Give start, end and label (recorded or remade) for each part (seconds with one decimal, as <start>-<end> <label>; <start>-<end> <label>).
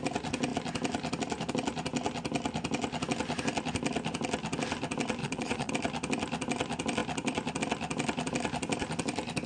0.0-5.2 recorded; 5.2-5.7 remade; 5.7-9.5 recorded